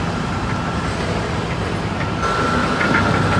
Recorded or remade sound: recorded